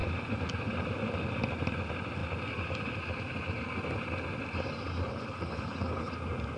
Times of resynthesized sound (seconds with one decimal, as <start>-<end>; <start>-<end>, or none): 5.1-6.1